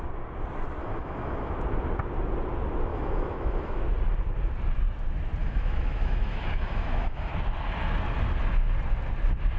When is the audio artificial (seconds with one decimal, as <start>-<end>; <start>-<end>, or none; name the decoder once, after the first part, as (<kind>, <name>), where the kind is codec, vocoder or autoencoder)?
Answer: 0.8-1.5 (autoencoder, DAC-VAE); 2.9-3.8; 5.4-7.3